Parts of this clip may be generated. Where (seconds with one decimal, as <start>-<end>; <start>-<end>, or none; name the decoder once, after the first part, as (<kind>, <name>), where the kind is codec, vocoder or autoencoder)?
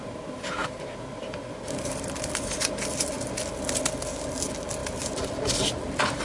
0.6-3.2 (vocoder, BigVGAN v2); 4.8-6.2